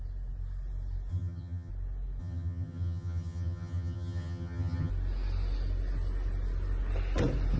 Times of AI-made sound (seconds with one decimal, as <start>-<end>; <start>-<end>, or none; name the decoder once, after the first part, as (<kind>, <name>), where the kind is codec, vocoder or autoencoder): 1.1-1.7 (vocoder, HiFi-GAN); 2.2-4.9